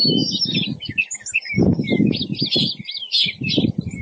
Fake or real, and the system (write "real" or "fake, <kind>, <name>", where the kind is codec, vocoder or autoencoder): real